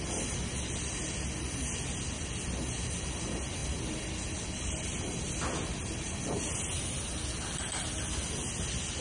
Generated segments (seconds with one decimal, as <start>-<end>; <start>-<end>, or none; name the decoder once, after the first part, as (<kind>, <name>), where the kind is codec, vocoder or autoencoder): none